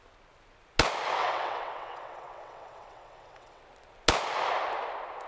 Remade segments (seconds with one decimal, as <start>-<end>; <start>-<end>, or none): 1.2-3.6